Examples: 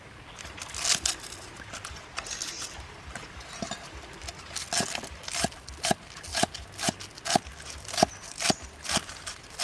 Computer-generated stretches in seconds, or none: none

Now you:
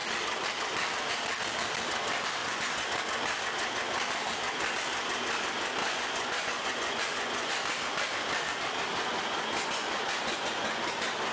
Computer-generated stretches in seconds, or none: 2.4-2.9 (vocoder, Vocos); 5.8-7.5; 9.1-10.8

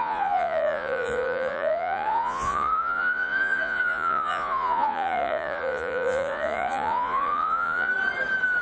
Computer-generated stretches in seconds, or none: 0.0-7.9 (vocoder, Vocos)

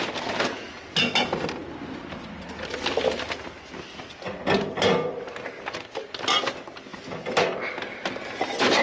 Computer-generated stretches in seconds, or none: none

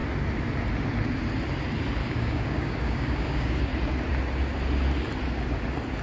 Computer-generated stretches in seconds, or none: 2.0-3.6 (codec, DAC)

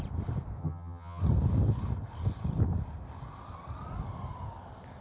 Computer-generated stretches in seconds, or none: 0.6-1.2 (vocoder, HiFi-GAN)

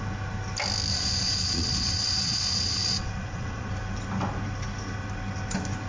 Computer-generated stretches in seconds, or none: 0.9-3.7 (vocoder, Vocos)

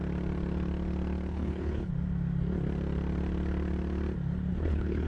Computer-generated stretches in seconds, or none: 1.3-1.9 (codec, HILCodec); 4.5-5.1